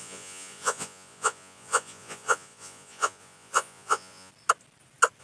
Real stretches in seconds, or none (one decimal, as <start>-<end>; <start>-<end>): 4.3-5.2